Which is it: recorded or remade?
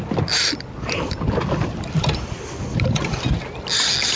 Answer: recorded